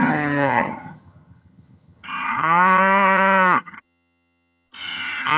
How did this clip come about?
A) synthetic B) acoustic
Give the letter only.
A